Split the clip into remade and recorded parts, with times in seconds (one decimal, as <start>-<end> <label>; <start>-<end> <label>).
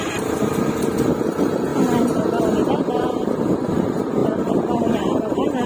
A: 0.0-1.7 remade; 1.7-2.4 recorded; 2.4-5.7 remade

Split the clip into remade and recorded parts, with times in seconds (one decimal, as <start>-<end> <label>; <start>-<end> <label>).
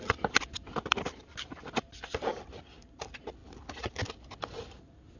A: 0.0-3.4 remade; 3.4-4.8 recorded; 4.8-5.2 remade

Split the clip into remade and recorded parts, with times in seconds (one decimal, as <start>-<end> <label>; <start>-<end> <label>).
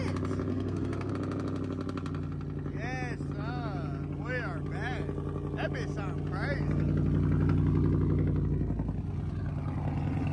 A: 0.0-0.5 recorded; 0.5-1.1 remade; 1.1-10.3 recorded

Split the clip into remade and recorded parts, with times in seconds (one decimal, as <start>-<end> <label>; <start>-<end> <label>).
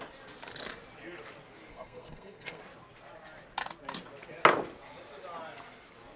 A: 0.0-1.7 recorded; 1.7-2.6 remade; 2.6-6.2 recorded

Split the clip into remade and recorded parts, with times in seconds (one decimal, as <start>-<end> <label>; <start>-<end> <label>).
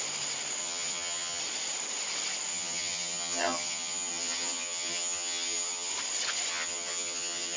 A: 0.0-0.6 recorded; 0.6-1.4 remade; 1.4-2.5 recorded; 2.5-5.9 remade; 5.9-6.5 recorded; 6.5-7.6 remade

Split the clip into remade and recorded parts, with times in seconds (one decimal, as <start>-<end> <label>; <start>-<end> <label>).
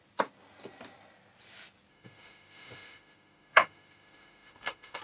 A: 0.0-1.9 recorded; 1.9-5.0 remade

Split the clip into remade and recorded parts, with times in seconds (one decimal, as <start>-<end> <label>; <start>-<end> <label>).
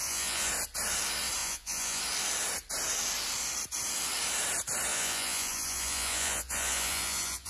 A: 0.0-0.5 remade; 0.5-1.4 recorded; 1.4-2.0 remade; 2.0-4.9 recorded; 4.9-7.5 remade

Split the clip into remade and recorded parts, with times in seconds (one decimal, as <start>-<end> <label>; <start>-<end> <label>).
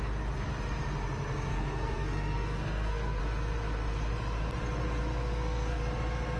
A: 0.0-1.5 recorded; 1.5-3.2 remade; 3.2-5.1 recorded; 5.1-5.8 remade; 5.8-6.4 recorded